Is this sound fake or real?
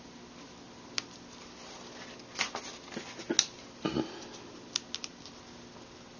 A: real